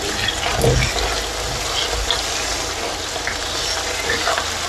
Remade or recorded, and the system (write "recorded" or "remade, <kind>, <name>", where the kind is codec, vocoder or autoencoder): recorded